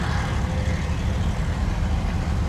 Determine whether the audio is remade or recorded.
recorded